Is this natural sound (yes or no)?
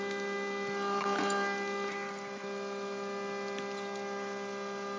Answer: yes